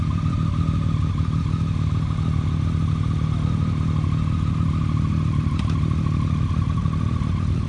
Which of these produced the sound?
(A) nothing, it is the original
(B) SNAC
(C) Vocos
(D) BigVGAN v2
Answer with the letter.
A